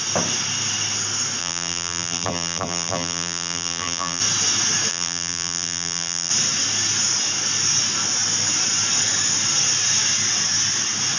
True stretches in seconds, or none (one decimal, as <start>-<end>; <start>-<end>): 0.0-1.4; 4.2-4.9; 6.3-11.2